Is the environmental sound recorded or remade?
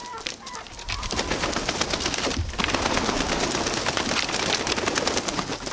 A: recorded